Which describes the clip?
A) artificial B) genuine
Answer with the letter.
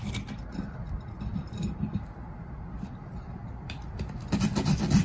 B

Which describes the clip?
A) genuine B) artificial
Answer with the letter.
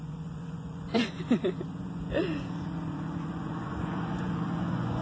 B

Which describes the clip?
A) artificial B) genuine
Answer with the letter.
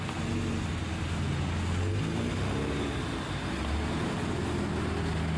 B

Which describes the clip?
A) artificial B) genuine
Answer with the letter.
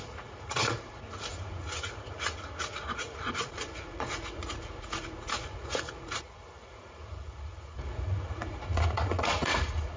A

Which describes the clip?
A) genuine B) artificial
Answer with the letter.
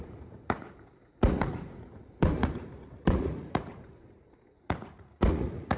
B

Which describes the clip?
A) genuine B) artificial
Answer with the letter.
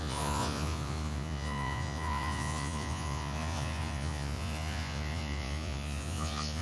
B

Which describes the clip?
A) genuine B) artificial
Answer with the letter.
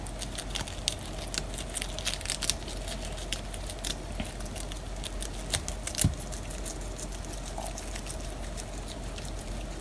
A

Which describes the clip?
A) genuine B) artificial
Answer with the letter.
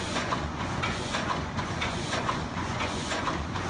B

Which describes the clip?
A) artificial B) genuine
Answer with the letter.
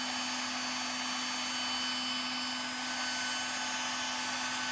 B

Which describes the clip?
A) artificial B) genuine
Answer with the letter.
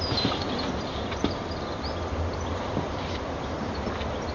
B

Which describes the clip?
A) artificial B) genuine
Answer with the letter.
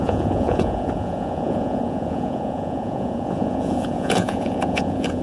A